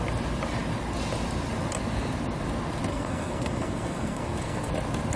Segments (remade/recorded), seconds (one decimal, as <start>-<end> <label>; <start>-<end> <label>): 0.0-2.9 recorded; 2.9-4.7 remade; 4.7-5.2 recorded